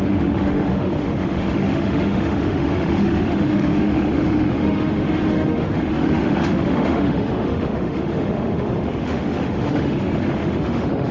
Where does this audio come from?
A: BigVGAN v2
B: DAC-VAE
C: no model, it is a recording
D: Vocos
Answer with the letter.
B